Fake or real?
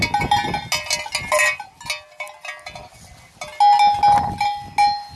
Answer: real